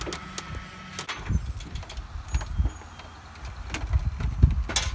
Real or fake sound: real